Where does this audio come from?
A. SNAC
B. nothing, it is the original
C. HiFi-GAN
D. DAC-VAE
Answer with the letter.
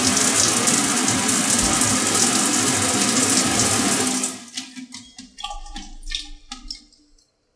B